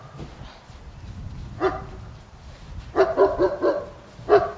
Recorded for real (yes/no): yes